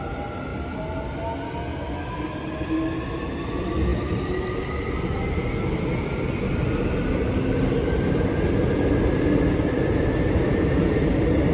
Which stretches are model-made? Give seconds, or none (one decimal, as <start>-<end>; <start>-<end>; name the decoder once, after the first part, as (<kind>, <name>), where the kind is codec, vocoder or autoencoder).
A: none